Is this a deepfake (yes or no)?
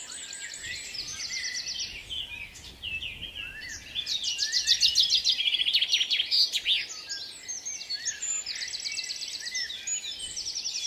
no